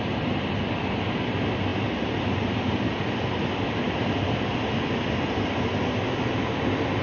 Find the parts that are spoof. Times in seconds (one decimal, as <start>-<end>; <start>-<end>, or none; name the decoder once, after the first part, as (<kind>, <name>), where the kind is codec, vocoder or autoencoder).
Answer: none